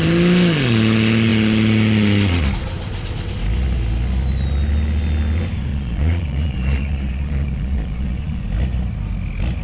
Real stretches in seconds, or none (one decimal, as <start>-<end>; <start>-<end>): 0.0-5.7; 8.4-9.6